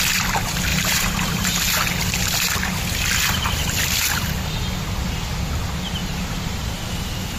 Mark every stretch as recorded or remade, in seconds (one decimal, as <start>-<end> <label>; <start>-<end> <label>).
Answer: 0.0-0.7 recorded; 0.7-1.6 remade; 1.6-6.0 recorded; 6.0-6.7 remade; 6.7-7.4 recorded